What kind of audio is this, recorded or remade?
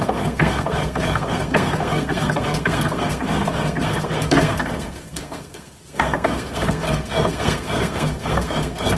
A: remade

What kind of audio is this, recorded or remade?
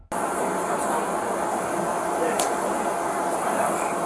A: recorded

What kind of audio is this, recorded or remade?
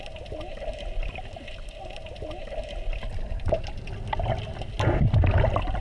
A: recorded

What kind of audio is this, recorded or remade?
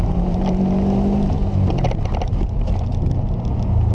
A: recorded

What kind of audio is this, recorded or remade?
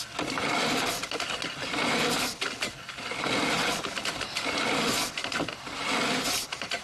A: recorded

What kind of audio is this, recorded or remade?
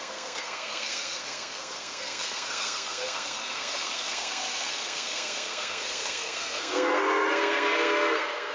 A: remade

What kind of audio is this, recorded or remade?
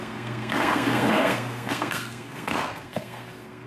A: remade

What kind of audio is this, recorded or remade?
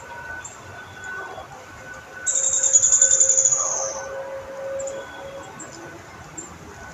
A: recorded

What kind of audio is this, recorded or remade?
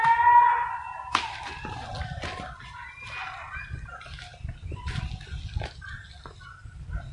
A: recorded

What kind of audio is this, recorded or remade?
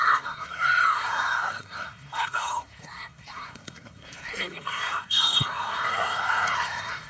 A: remade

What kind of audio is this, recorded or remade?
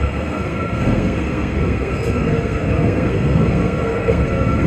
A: remade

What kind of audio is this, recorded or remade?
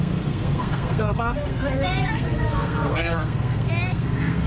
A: remade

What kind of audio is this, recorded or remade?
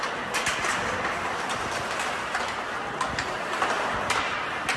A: recorded